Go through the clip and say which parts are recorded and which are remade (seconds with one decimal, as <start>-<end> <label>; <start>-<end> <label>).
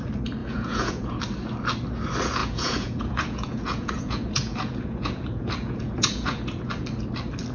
0.0-0.4 recorded; 0.4-1.2 remade; 1.2-2.4 recorded; 2.4-6.7 remade; 6.7-7.5 recorded